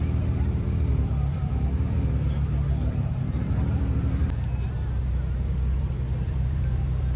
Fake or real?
fake